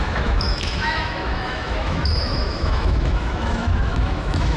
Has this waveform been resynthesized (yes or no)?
yes